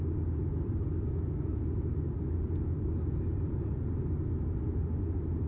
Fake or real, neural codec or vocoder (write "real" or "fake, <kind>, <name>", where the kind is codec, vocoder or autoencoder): real